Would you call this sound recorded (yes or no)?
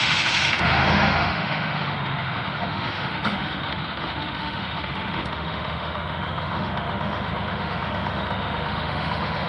no